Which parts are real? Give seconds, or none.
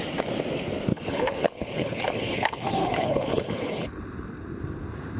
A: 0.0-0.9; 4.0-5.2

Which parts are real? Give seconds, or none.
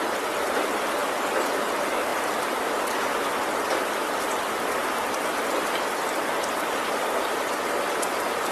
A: 0.0-1.0; 1.6-2.1; 2.8-4.8; 5.5-8.5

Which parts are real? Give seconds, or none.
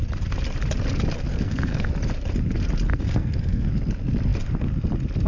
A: 0.0-1.3; 1.9-2.9; 3.7-5.3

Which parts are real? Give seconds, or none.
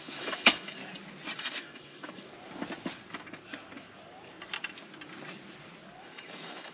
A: 0.8-1.4; 2.3-6.0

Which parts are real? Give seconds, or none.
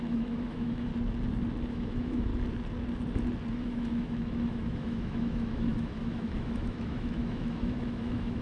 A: 0.9-1.7; 2.3-3.5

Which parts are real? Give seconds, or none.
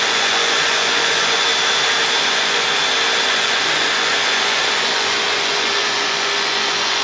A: 1.5-2.2; 2.8-3.3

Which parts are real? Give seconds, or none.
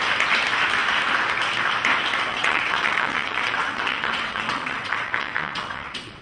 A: 0.0-2.3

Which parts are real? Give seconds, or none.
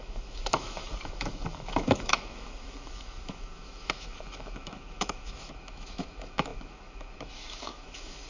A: none